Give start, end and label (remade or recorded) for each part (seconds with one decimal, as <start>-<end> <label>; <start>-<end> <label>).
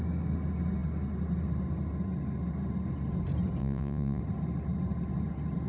0.0-3.6 recorded; 3.6-4.2 remade; 4.2-5.7 recorded